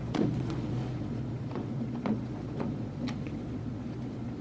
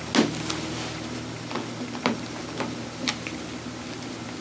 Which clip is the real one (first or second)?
second